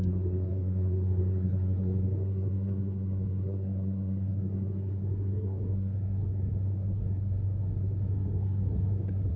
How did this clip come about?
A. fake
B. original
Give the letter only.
A